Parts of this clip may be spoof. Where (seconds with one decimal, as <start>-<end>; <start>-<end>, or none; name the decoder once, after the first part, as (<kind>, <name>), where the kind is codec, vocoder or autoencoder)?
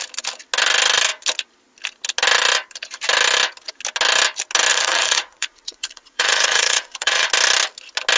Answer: 4.7-7.3 (vocoder, Vocos)